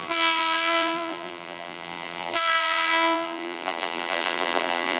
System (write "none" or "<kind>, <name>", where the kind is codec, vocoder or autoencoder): vocoder, BigVGAN v2